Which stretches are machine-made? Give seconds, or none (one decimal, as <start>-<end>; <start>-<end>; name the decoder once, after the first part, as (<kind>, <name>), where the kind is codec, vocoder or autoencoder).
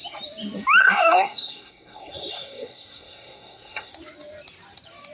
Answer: 0.8-3.9 (codec, SNAC)